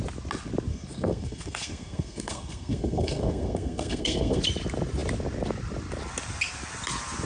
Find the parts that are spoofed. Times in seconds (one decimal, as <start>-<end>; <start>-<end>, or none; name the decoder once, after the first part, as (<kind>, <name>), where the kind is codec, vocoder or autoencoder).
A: 0.7-4.4 (codec, SNAC)